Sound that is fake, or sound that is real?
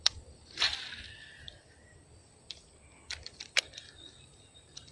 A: fake